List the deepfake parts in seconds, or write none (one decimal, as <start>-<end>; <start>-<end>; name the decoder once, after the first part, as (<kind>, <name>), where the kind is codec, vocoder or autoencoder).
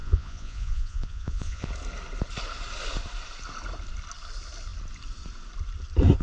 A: 0.0-1.7 (vocoder, Vocos)